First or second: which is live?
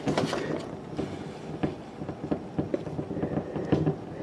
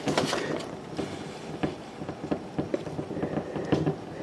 first